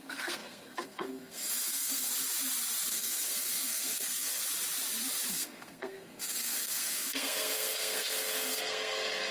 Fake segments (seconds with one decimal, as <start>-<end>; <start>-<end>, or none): 0.0-2.1; 2.9-4.4; 5.3-9.3